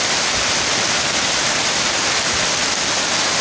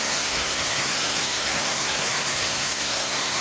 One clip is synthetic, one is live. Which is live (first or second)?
first